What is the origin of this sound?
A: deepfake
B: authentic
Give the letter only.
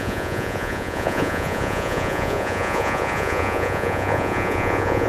A